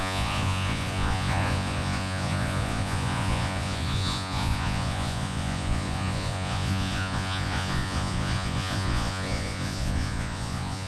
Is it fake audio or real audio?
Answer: fake